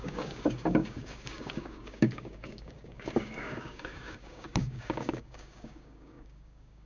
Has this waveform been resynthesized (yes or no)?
yes